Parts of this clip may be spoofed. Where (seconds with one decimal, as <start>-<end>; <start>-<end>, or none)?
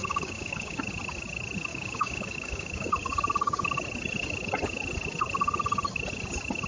0.0-0.8; 1.7-2.9